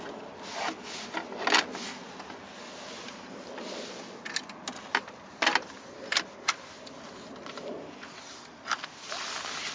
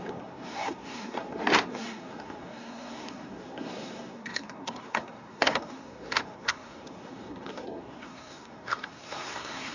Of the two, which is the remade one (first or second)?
second